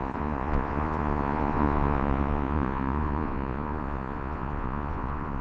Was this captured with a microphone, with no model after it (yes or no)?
no